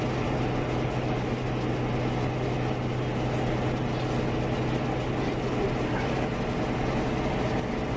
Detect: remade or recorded recorded